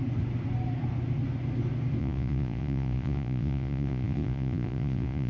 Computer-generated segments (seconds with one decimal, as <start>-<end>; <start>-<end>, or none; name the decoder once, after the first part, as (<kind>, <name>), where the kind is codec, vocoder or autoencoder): 2.0-5.3 (vocoder, Vocos)